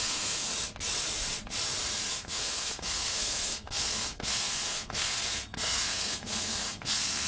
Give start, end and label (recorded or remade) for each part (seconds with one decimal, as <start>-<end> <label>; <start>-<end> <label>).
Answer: 0.0-0.5 remade; 0.5-2.1 recorded; 2.1-7.3 remade

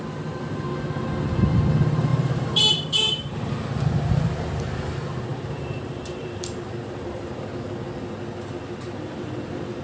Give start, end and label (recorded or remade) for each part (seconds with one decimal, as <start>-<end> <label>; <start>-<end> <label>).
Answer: 0.0-2.1 recorded; 2.1-3.5 remade; 3.5-5.3 recorded; 5.3-7.4 remade; 7.4-9.8 recorded

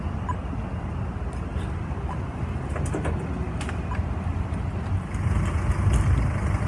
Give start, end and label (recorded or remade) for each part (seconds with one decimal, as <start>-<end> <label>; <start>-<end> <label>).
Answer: 0.0-6.7 recorded

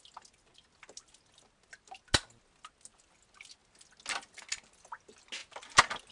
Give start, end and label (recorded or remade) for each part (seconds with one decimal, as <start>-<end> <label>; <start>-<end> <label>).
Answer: 0.0-6.1 recorded

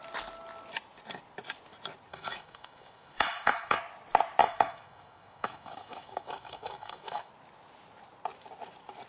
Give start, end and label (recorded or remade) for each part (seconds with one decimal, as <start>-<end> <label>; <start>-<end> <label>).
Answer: 0.0-2.1 recorded; 2.1-3.8 remade; 3.8-4.4 recorded; 4.4-7.3 remade; 7.3-9.1 recorded

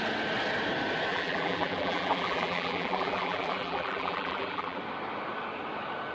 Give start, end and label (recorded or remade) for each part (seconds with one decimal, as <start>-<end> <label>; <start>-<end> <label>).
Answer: 0.0-1.1 recorded; 1.1-4.8 remade; 4.8-6.1 recorded